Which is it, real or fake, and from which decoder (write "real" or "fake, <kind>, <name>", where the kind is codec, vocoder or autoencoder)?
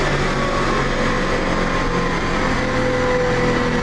real